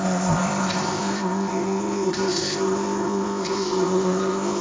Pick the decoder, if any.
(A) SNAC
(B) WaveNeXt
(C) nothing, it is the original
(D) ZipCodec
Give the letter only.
D